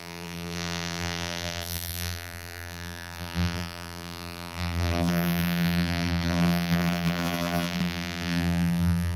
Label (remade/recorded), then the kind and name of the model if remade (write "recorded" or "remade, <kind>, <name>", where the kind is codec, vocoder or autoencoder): remade, vocoder, BigVGAN v2